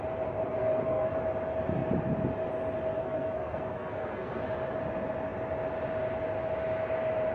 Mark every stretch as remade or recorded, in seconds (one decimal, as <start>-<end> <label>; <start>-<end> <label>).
0.0-0.5 recorded; 0.5-1.1 remade; 1.1-3.0 recorded; 3.0-4.4 remade; 4.4-7.3 recorded